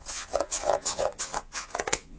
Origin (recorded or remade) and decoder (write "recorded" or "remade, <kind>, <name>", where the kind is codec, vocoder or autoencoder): remade, vocoder, Vocos